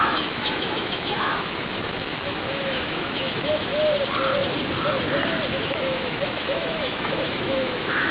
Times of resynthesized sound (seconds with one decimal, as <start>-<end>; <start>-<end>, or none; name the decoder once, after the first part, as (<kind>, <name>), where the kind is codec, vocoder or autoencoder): 0.0-3.7 (autoencoder, DAC-VAE); 5.5-8.1